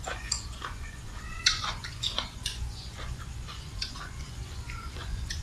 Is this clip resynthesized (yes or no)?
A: yes